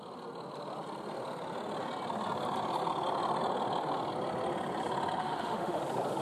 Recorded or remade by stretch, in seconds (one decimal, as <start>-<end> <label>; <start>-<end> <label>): 0.0-5.2 recorded; 5.2-5.8 remade; 5.8-6.2 recorded